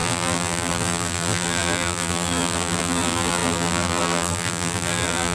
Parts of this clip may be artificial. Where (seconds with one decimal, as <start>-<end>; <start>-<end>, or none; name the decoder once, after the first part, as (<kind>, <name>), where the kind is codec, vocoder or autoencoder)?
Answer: 0.0-5.3 (vocoder, BigVGAN v2)